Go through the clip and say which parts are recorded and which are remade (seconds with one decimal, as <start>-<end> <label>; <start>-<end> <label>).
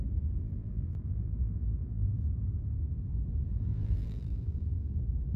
0.0-0.4 recorded; 0.4-2.2 remade; 2.2-3.7 recorded; 3.7-5.0 remade; 5.0-5.4 recorded